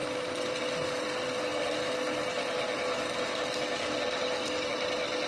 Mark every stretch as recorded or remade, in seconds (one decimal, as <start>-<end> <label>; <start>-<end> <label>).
0.0-5.3 recorded